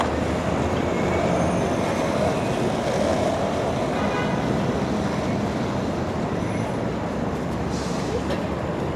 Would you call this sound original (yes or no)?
yes